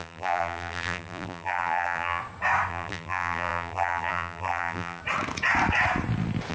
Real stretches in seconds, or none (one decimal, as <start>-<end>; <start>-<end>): 2.2-2.7; 5.0-6.5